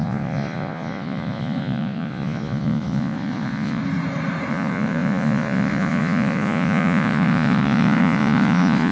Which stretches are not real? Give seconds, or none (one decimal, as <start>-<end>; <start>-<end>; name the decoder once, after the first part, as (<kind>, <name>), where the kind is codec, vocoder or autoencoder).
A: 0.0-3.8 (vocoder, Vocos); 4.5-8.9